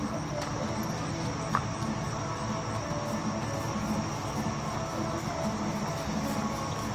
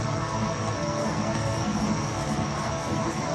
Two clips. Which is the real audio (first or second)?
first